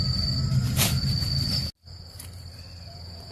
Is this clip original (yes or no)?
yes